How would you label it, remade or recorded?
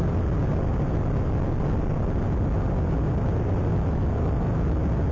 recorded